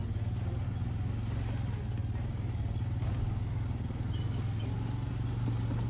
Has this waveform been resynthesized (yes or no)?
no